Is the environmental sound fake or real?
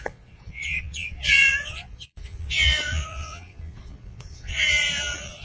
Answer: fake